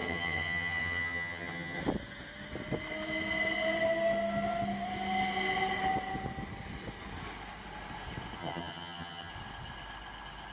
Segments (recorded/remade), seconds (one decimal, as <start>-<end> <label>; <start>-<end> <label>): 0.0-1.8 remade; 1.8-8.4 recorded; 8.4-9.3 remade; 9.3-10.5 recorded